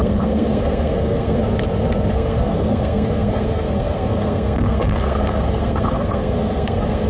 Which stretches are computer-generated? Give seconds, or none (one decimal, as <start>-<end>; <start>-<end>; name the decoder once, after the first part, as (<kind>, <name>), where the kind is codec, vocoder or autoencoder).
0.0-1.4 (codec, SNAC); 2.1-7.1